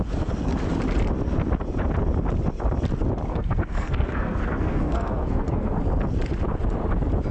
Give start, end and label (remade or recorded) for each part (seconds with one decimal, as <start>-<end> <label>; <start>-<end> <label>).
0.0-3.3 recorded; 3.3-5.8 remade; 5.8-7.3 recorded